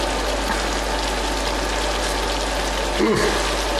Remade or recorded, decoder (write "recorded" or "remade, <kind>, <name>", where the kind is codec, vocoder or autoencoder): recorded